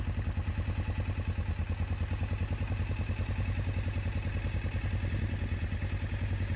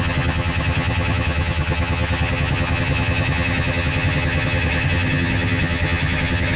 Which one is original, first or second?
first